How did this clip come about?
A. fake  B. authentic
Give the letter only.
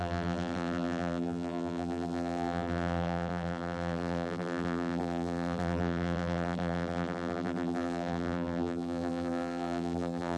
A